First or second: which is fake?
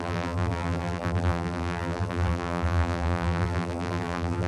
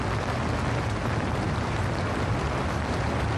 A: first